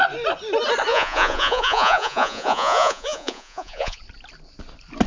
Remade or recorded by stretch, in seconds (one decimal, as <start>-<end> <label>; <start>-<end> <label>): 0.0-0.9 recorded; 0.9-4.0 remade; 4.0-5.1 recorded